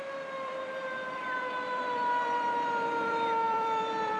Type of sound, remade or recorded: remade